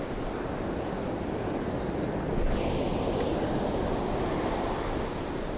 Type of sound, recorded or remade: recorded